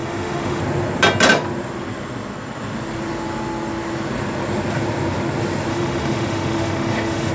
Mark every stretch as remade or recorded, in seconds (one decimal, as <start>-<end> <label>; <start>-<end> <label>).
0.0-0.6 remade; 0.6-5.7 recorded; 5.7-7.3 remade

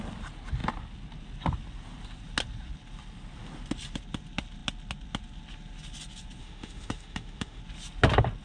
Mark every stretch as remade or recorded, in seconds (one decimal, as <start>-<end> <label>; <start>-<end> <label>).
0.0-6.4 recorded; 6.4-7.6 remade; 7.6-8.4 recorded

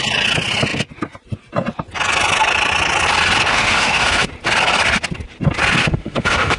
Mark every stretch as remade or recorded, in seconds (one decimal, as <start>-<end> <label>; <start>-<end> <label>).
0.0-3.5 recorded; 3.5-4.3 remade; 4.3-5.8 recorded; 5.8-6.6 remade

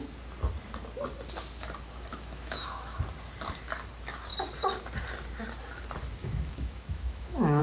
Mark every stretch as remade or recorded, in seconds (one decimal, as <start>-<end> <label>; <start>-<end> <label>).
0.0-2.1 recorded; 2.1-3.0 remade; 3.0-6.2 recorded; 6.2-7.6 remade

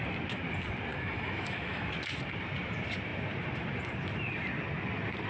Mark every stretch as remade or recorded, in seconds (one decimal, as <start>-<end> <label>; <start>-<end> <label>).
0.0-0.9 recorded; 0.9-1.9 remade; 1.9-5.3 recorded

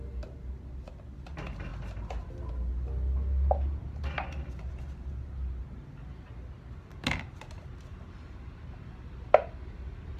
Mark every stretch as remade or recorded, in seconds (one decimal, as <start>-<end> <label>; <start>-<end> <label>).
0.0-10.2 recorded